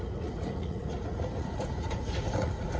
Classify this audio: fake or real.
fake